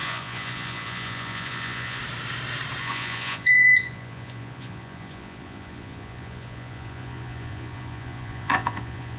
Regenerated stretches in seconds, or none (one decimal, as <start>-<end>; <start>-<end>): 0.0-2.0; 2.8-9.2

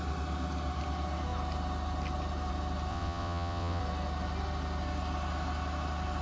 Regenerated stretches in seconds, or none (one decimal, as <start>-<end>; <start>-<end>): 2.9-3.8

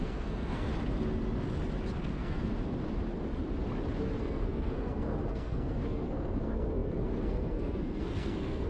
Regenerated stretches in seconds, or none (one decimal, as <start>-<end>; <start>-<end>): 0.0-0.7; 2.0-2.5; 4.2-8.7